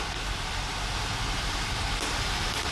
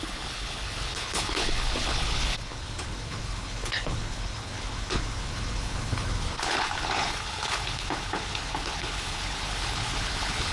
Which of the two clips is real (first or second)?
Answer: first